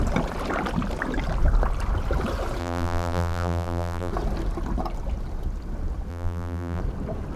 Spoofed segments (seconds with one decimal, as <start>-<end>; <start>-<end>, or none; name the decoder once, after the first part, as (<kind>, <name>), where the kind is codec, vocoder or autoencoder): 2.6-4.1 (vocoder, BigVGAN v2); 6.1-6.8